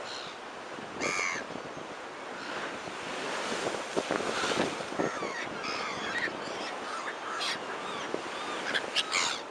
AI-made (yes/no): no